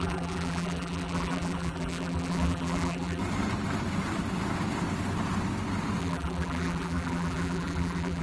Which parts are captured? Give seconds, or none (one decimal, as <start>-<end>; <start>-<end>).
3.2-6.0